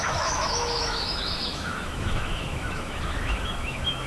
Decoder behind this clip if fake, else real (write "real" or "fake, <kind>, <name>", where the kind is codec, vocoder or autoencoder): fake, autoencoder, DAC-VAE